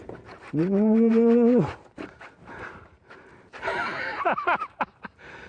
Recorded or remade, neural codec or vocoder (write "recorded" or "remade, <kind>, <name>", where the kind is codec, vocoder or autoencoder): remade, vocoder, BigVGAN v2